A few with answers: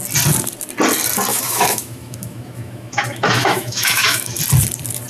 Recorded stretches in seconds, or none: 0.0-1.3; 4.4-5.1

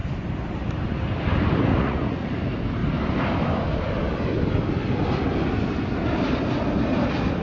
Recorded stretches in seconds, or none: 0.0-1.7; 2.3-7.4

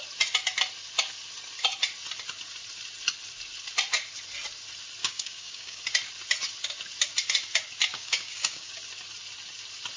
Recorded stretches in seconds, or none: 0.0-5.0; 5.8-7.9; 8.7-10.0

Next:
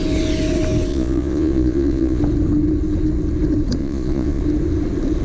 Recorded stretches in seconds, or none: 0.0-0.9; 2.2-3.8; 4.4-5.2

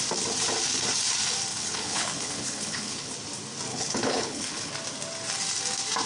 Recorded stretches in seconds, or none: 0.0-1.5; 3.1-3.7; 4.7-6.1

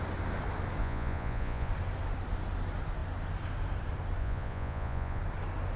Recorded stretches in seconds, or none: 0.0-0.8; 1.7-4.2; 5.2-5.8